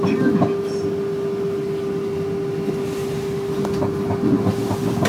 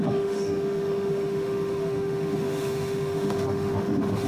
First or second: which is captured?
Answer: first